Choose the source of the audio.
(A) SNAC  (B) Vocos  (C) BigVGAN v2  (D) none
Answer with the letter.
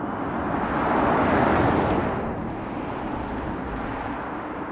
D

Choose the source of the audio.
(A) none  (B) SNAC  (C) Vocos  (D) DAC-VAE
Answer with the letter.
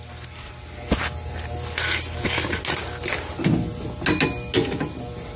A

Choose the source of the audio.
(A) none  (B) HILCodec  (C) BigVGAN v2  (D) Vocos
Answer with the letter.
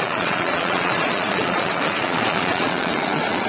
D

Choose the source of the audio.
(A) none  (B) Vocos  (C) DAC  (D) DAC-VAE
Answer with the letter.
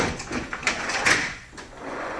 B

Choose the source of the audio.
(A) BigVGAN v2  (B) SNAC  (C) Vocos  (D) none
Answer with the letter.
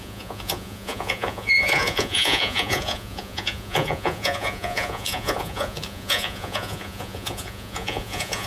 C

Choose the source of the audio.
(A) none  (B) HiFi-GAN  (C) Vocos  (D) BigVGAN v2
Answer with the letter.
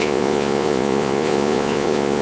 C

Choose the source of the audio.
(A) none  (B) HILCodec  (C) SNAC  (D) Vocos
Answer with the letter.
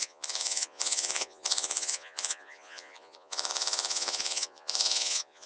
D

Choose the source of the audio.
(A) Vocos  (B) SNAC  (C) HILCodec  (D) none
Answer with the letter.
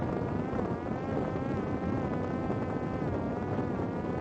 D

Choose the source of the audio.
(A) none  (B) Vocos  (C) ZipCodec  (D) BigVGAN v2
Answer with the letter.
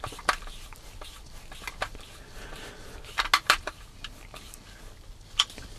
A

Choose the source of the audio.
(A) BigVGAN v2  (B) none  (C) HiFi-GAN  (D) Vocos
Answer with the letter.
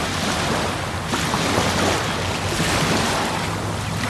B